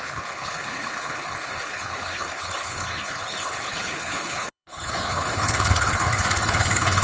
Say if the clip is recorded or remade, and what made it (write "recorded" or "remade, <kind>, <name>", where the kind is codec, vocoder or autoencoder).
remade, codec, HILCodec